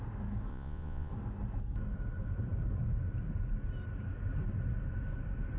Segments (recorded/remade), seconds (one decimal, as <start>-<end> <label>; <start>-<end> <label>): 0.0-0.5 recorded; 0.5-1.1 remade; 1.1-5.6 recorded